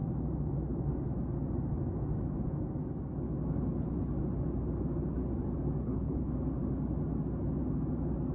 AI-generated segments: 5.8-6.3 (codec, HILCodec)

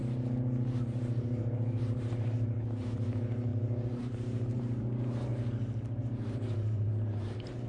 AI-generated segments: 0.8-5.3 (vocoder, BigVGAN v2); 6.0-7.7

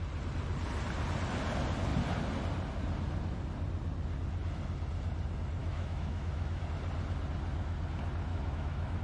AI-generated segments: 5.6-6.6 (autoencoder, DAC-VAE); 8.3-9.0